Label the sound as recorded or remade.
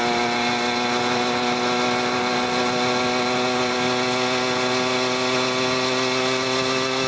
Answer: recorded